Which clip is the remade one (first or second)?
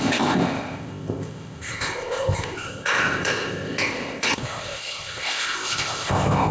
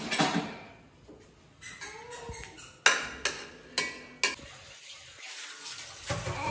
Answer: first